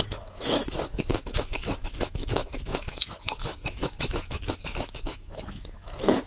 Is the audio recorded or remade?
remade